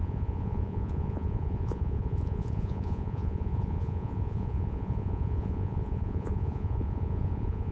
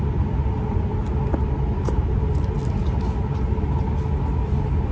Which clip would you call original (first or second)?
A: second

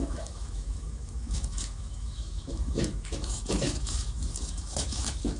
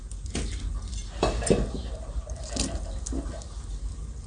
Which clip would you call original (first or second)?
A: second